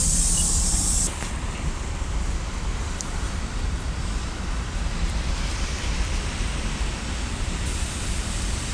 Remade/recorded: remade